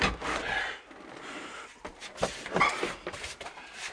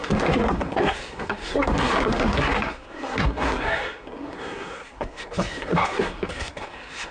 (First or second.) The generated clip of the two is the second